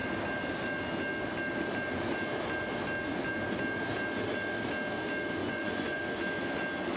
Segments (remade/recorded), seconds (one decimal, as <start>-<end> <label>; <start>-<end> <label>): 0.0-5.4 recorded; 5.4-6.0 remade; 6.0-7.0 recorded